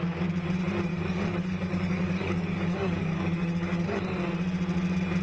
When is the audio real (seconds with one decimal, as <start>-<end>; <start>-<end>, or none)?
0.0-0.9; 4.0-5.2

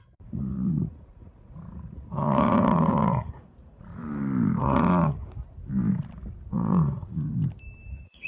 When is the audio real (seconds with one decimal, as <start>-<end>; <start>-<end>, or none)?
4.0-4.6; 5.2-6.5; 7.3-7.9